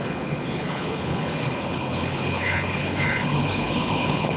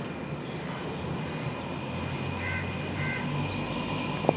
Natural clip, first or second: second